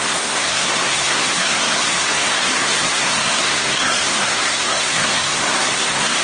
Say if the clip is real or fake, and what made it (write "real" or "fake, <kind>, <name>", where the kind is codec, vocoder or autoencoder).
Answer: fake, codec, SNAC